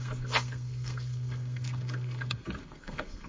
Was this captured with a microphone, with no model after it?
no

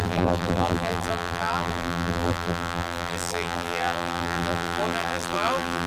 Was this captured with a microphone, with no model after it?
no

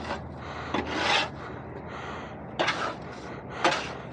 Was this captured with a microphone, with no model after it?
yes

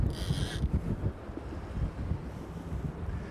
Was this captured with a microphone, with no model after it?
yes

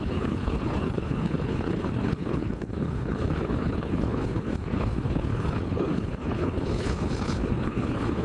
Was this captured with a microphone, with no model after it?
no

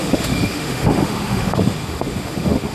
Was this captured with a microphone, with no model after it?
no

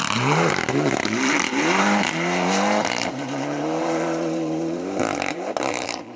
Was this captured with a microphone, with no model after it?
no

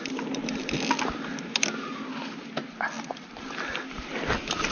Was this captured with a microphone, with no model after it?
yes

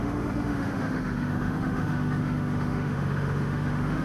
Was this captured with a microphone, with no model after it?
no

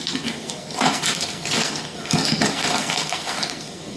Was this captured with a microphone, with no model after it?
no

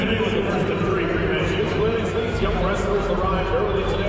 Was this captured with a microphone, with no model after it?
no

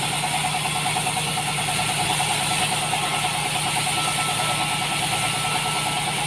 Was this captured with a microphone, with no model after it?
yes